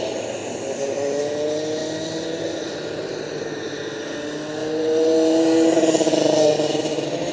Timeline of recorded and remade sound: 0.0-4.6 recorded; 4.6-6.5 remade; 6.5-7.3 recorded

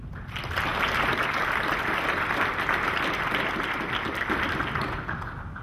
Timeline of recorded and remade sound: 0.0-5.6 recorded

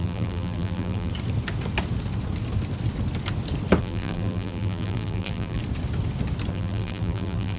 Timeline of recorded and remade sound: 0.0-1.1 remade; 1.1-3.8 recorded; 3.8-5.6 remade; 5.6-6.5 recorded; 6.5-7.6 remade

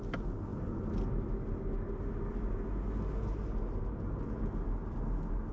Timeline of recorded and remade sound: 0.0-5.5 recorded

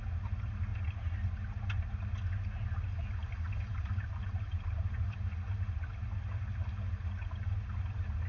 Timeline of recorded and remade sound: 0.0-3.7 recorded; 3.7-5.2 remade; 5.2-8.3 recorded

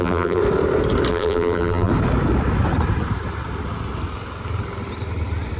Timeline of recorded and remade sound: 0.0-0.4 remade; 0.4-1.1 recorded; 1.1-1.9 remade; 1.9-5.6 recorded

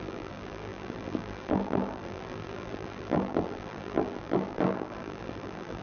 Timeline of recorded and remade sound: 0.0-5.8 remade

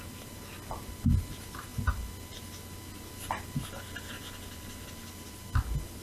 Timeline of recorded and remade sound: 0.0-1.7 remade; 1.7-5.3 recorded; 5.3-6.0 remade